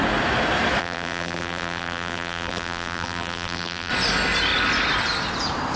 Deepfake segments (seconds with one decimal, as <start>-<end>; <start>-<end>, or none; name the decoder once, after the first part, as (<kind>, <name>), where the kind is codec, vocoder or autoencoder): 0.8-3.9 (vocoder, BigVGAN v2)